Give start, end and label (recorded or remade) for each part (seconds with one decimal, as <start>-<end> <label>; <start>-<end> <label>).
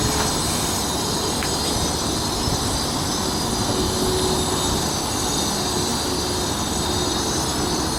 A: 0.0-8.0 recorded